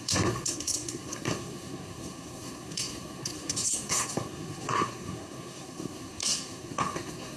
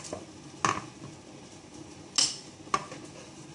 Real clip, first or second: second